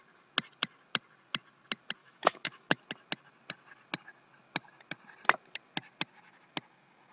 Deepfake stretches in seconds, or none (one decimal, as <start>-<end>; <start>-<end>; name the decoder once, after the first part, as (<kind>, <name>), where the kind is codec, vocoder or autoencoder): 2.0-2.8 (autoencoder, DAC-VAE)